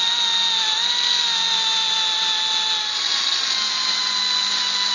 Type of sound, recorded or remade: recorded